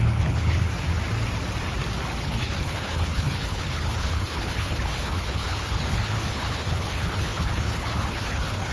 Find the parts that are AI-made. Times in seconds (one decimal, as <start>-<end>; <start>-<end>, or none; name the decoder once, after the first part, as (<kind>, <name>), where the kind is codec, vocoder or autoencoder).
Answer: 0.0-0.7 (codec, HILCodec); 2.2-8.7